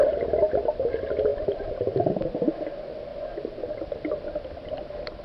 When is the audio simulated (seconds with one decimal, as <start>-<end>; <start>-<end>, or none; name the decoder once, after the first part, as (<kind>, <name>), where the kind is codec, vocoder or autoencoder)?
1.3-2.5 (vocoder, BigVGAN v2)